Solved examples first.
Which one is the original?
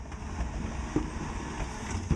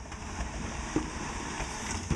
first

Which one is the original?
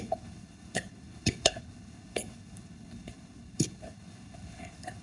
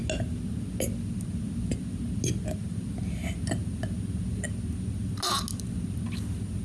second